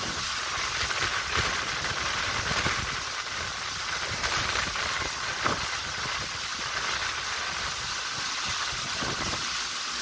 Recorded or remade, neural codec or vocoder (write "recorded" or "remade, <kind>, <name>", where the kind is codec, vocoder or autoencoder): recorded